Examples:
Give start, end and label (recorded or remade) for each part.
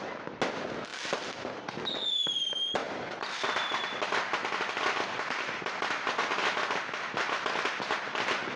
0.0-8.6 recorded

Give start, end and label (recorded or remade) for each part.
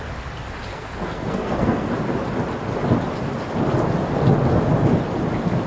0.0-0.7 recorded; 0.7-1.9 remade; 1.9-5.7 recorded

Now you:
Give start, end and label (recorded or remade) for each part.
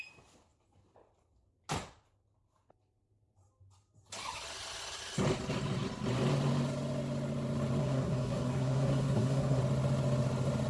0.0-7.8 recorded; 7.8-9.6 remade; 9.6-10.7 recorded